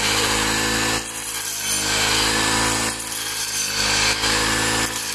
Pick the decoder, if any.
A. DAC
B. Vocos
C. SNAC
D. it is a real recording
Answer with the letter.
D